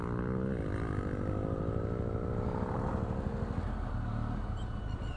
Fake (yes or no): no